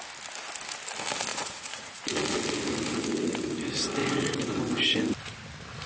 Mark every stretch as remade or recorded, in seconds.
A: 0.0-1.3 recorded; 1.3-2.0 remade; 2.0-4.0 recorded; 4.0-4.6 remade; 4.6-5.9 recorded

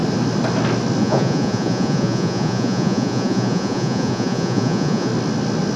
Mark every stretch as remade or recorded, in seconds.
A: 0.0-1.0 recorded; 1.0-5.1 remade; 5.1-5.8 recorded

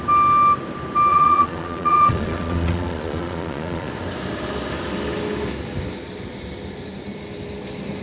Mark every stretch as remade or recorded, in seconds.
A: 0.0-1.1 recorded; 1.1-3.9 remade; 3.9-8.0 recorded

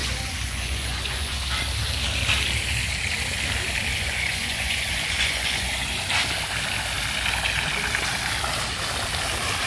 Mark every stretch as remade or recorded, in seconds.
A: 0.0-1.4 remade; 1.4-3.9 recorded; 3.9-6.0 remade; 6.0-9.7 recorded

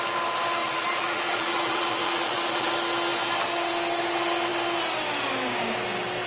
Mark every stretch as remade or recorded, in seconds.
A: 0.0-0.6 recorded; 0.6-2.7 remade; 2.7-6.3 recorded

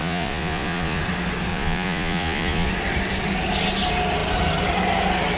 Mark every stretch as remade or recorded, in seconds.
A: 0.0-1.0 remade; 1.0-1.5 recorded; 1.5-2.7 remade; 2.7-5.4 recorded

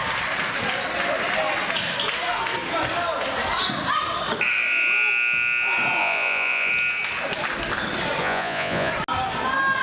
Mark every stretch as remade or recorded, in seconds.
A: 0.0-6.0 recorded; 6.0-6.7 remade; 6.7-8.2 recorded; 8.2-8.9 remade; 8.9-9.8 recorded